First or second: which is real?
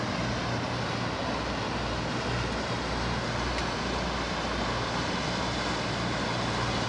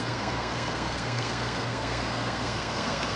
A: first